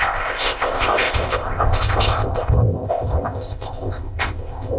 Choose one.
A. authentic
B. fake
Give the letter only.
B